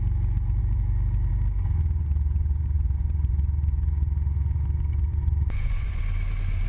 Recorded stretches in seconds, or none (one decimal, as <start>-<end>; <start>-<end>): 0.0-2.0; 6.0-6.7